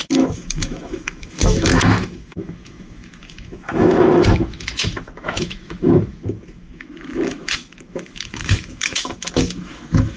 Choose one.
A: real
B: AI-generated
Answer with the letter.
B